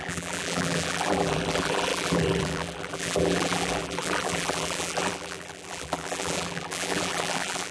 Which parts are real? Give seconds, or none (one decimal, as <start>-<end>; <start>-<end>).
none